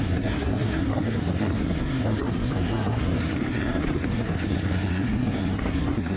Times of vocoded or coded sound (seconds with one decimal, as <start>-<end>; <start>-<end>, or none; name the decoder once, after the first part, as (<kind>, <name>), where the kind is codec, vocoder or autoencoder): 0.0-6.2 (codec, SNAC)